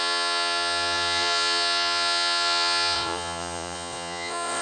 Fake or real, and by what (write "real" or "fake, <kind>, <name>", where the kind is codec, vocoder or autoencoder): fake, vocoder, Vocos